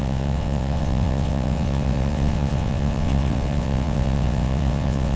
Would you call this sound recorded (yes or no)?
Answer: no